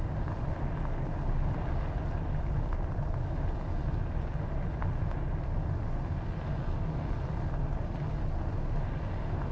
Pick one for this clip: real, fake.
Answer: real